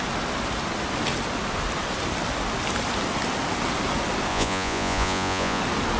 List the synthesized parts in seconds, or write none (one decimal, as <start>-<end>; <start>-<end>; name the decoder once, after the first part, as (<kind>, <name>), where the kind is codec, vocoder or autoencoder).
4.3-5.6 (vocoder, Vocos)